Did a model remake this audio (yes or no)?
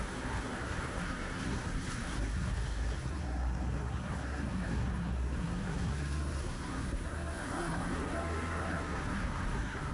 yes